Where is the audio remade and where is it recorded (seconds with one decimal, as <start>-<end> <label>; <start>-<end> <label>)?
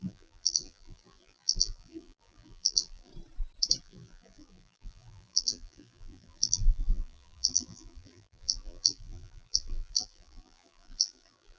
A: 0.0-3.1 remade; 3.1-3.8 recorded; 3.8-11.6 remade